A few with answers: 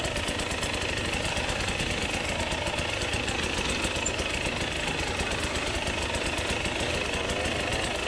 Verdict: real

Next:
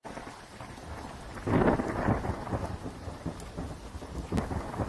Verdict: real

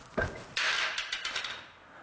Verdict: real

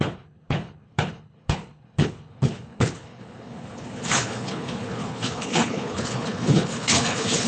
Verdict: fake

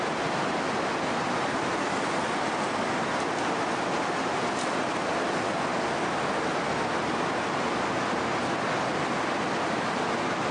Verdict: real